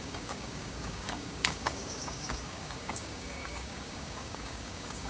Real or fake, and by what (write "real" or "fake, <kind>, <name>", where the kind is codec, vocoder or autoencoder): fake, codec, DAC